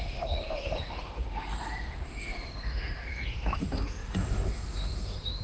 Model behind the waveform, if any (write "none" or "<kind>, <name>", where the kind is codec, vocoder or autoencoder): autoencoder, DAC-VAE